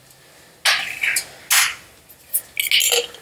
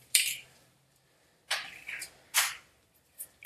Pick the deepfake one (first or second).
second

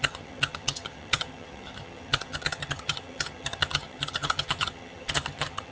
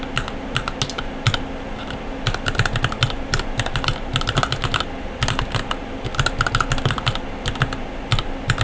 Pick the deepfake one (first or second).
first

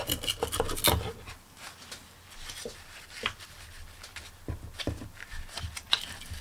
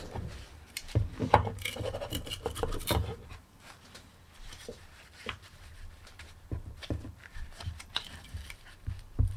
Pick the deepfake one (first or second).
second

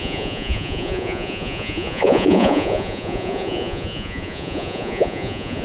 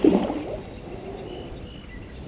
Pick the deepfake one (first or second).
first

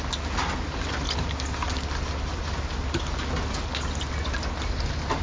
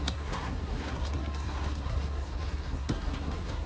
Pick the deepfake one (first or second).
second